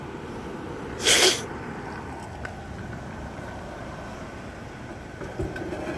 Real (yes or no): yes